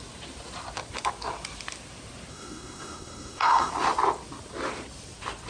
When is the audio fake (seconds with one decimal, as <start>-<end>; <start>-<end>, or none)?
2.3-3.7